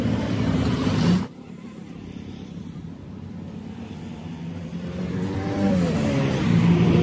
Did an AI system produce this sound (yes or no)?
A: yes